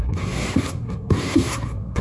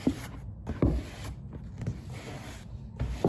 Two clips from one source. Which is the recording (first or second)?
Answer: second